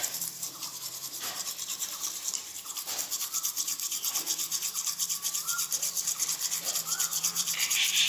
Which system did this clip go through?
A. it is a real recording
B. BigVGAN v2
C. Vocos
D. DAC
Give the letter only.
B